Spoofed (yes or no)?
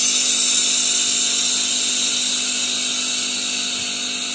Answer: no